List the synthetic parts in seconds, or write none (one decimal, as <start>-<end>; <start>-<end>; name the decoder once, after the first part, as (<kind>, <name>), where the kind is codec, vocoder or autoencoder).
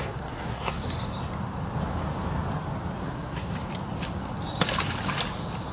0.0-0.9 (codec, SNAC); 3.0-3.5